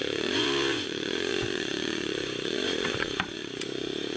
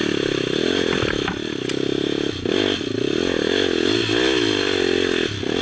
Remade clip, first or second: first